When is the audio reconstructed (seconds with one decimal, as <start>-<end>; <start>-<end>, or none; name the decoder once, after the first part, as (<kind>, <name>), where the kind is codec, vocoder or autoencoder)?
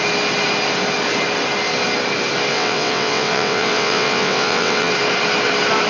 2.5-4.9 (vocoder, WaveNeXt)